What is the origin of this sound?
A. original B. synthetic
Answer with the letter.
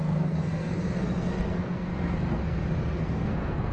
B